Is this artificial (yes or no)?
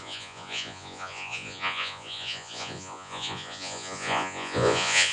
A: yes